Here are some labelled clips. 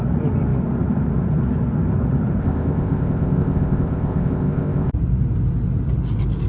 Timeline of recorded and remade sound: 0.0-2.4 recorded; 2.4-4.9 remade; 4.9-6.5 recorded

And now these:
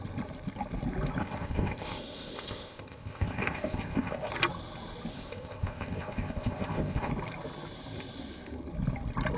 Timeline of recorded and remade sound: 0.0-1.2 recorded; 1.2-4.3 remade; 4.3-5.1 recorded; 5.1-7.1 remade; 7.1-9.4 recorded

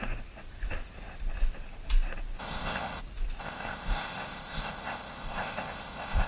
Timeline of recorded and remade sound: 0.0-2.4 recorded; 2.4-3.0 remade; 3.0-3.4 recorded; 3.4-6.3 remade